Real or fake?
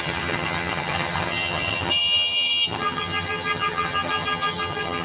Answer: fake